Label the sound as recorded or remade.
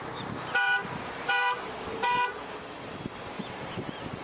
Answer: remade